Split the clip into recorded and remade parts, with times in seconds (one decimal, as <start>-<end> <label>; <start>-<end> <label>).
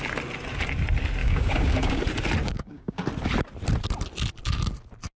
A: 0.0-1.2 recorded; 1.2-2.0 remade; 2.0-2.5 recorded; 2.5-3.0 remade; 3.0-5.2 recorded